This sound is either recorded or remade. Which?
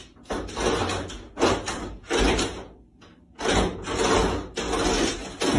recorded